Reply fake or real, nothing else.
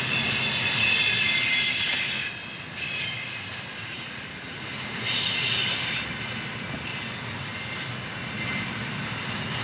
real